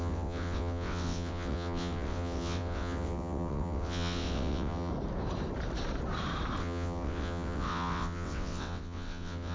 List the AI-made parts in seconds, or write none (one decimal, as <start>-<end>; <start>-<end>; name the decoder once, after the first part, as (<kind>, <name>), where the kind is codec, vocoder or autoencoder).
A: 0.0-4.9 (vocoder, WaveNeXt); 6.6-9.5